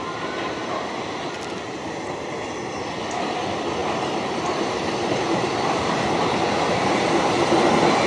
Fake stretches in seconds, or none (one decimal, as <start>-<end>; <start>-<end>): 3.8-6.8